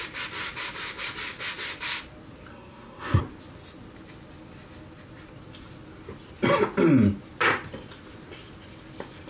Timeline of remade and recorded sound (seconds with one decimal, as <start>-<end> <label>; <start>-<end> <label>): 0.0-2.5 recorded; 2.5-3.2 remade; 3.2-9.3 recorded